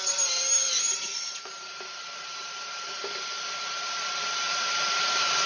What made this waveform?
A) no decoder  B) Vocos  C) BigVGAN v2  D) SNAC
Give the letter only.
C